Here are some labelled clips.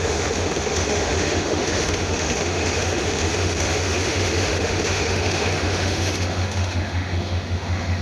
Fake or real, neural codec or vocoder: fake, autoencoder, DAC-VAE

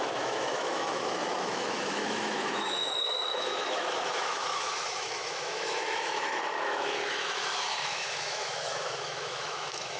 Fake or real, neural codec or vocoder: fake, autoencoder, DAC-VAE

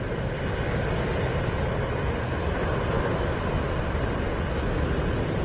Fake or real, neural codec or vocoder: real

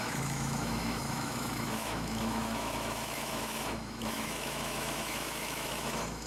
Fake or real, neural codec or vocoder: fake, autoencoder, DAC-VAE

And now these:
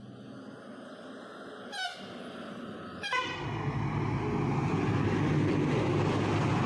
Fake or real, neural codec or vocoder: real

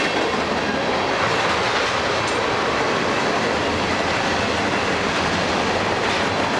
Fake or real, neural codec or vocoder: real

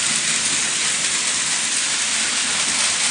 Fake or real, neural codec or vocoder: real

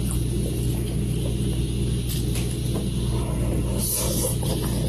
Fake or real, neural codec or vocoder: real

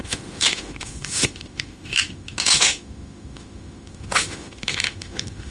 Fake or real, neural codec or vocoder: fake, autoencoder, DAC-VAE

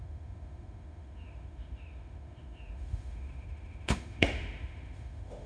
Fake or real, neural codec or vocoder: fake, autoencoder, DAC-VAE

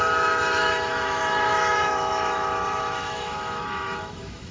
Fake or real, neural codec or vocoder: fake, autoencoder, DAC-VAE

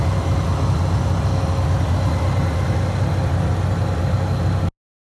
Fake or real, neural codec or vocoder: real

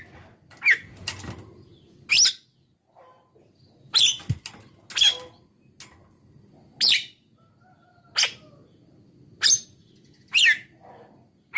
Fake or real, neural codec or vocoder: real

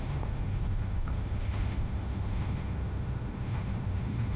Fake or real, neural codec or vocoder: fake, autoencoder, DAC-VAE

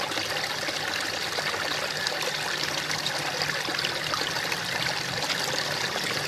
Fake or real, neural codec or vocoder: real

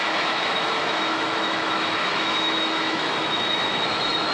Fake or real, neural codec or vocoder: fake, autoencoder, DAC-VAE